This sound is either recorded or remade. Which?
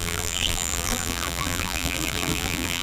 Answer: remade